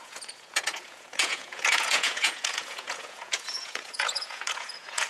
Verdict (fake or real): fake